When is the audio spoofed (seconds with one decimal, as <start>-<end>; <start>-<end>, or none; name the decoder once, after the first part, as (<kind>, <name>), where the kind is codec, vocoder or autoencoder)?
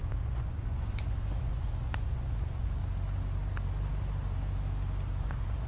0.0-2.8 (vocoder, Vocos); 5.2-5.7